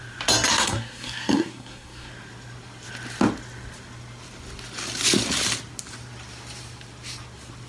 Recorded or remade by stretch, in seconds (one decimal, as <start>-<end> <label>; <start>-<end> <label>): 0.0-0.5 recorded; 0.5-2.1 remade; 2.1-7.7 recorded